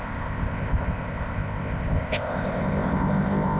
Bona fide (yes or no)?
no